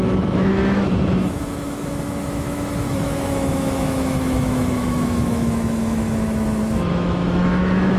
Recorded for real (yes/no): no